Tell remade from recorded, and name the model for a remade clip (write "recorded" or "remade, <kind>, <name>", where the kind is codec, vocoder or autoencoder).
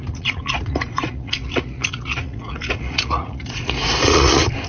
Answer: remade, vocoder, Vocos